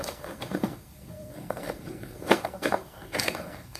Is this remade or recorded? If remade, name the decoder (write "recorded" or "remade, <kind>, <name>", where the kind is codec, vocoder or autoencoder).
remade, codec, SNAC